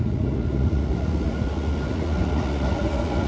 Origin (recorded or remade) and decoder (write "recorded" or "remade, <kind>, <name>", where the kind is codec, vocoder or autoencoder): remade, vocoder, Vocos